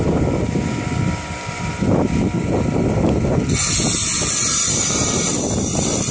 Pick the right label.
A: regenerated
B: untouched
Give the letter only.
B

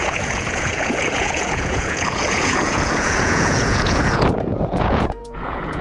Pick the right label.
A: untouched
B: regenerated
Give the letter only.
B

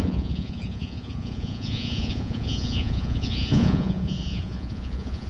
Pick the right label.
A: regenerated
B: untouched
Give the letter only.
A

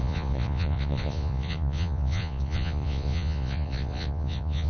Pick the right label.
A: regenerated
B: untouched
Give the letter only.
A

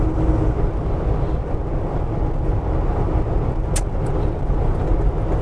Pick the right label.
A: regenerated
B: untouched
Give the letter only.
B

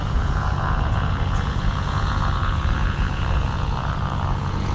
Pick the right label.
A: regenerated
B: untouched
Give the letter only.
A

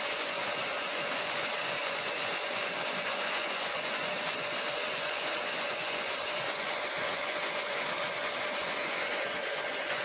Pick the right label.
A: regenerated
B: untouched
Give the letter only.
A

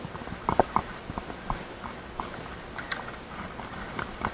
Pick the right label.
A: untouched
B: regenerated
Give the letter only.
A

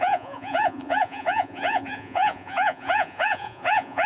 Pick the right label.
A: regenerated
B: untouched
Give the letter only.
A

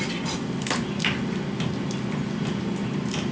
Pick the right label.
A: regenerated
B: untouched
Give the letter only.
B